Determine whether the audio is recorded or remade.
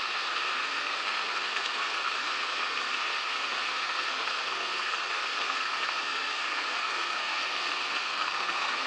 remade